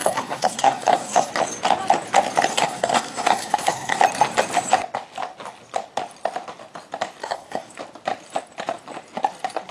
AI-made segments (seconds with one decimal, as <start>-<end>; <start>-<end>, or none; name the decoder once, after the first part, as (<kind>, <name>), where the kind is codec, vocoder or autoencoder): 0.0-1.3 (codec, SNAC); 2.5-4.0; 7.2-7.7